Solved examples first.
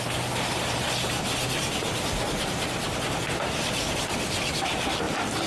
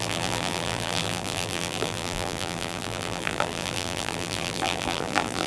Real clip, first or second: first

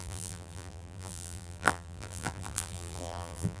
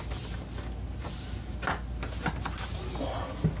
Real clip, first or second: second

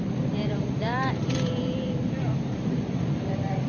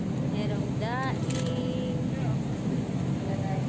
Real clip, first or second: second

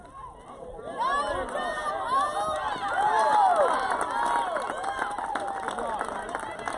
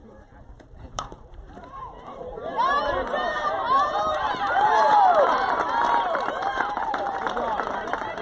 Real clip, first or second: first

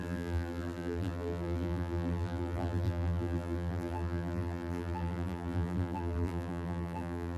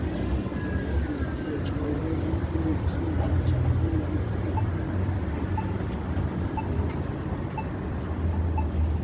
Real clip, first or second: second